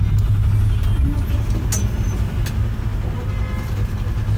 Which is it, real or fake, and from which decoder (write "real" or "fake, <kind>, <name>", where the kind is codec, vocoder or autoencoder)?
real